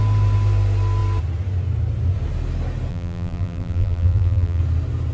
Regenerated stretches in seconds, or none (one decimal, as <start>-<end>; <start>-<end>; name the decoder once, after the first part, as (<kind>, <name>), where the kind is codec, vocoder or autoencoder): 2.9-4.6 (vocoder, BigVGAN v2)